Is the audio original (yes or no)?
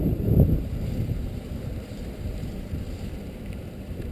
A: no